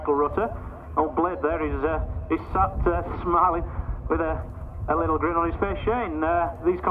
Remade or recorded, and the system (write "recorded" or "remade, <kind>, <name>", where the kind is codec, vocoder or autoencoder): recorded